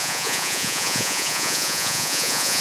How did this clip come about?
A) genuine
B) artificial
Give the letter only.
B